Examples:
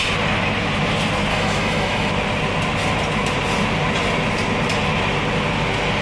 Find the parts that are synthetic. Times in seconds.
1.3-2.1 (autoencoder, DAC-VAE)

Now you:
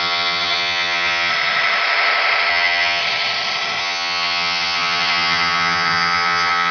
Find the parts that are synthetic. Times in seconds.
0.0-1.3 (vocoder, HiFi-GAN); 2.5-3.0; 3.8-6.7

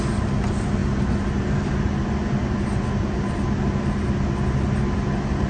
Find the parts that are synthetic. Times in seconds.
none

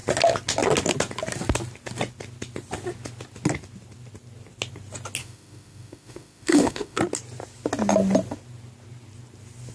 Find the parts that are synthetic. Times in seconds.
5.2-7.0 (autoencoder, DAC-VAE)

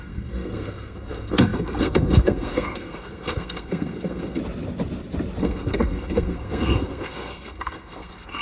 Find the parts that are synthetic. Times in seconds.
0.0-4.4 (codec, SNAC); 5.4-8.4

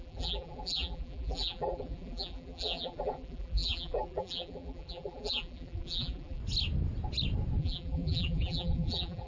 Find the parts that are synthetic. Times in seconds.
0.0-6.4 (vocoder, BigVGAN v2); 7.6-9.3